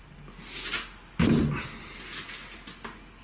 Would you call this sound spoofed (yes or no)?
no